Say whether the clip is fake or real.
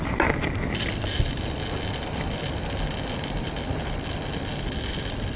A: real